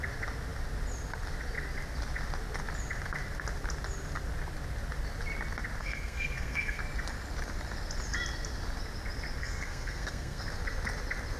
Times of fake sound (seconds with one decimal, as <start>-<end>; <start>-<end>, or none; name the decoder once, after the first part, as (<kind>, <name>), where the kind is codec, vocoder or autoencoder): 5.8-6.8 (codec, SNAC); 9.4-10.5